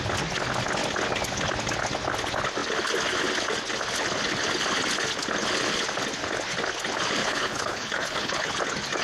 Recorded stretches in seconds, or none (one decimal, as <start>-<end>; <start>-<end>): 0.0-7.2; 8.5-9.0